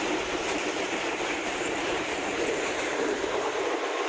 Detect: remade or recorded remade